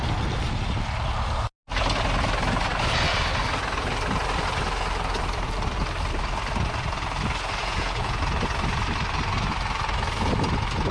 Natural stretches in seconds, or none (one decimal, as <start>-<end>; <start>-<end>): 0.0-7.6; 8.2-10.9